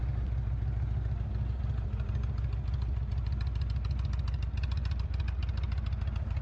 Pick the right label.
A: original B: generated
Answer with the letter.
A